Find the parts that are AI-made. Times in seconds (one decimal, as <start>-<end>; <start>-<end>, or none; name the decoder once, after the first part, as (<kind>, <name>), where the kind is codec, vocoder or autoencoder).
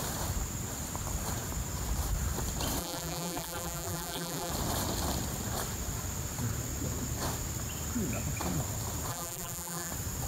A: 2.8-4.5 (vocoder, BigVGAN v2); 9.1-9.9